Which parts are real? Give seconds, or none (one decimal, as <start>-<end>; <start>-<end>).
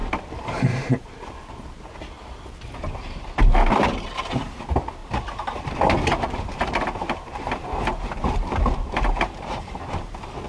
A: 1.3-3.7; 4.6-5.0; 10.1-10.5